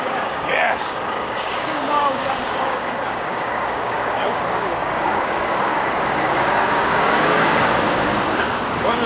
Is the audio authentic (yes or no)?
no